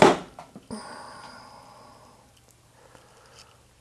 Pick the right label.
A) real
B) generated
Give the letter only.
A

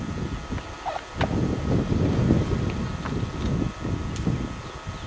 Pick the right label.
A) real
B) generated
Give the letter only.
A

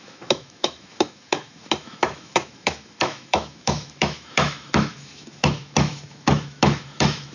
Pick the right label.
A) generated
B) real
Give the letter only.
A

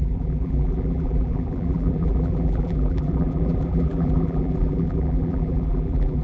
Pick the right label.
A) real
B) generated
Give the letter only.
B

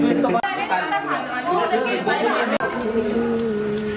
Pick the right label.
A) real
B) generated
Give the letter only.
A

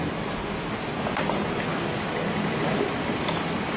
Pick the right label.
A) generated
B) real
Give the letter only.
B